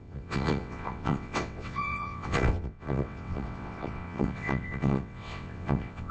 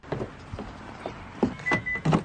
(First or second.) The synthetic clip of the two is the first